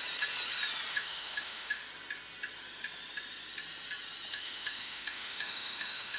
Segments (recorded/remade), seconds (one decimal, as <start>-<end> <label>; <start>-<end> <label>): 0.0-0.9 recorded; 0.9-1.8 remade; 1.8-4.3 recorded; 4.3-6.2 remade